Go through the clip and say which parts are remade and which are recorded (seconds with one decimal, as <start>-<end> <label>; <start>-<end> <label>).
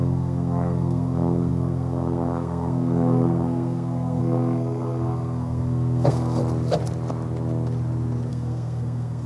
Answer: 0.0-6.4 remade; 6.4-8.3 recorded; 8.3-9.3 remade